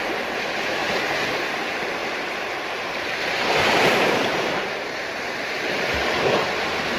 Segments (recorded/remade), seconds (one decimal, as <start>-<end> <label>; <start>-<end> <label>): 0.0-0.8 recorded; 0.8-1.3 remade; 1.3-2.0 recorded; 2.0-5.2 remade; 5.2-7.0 recorded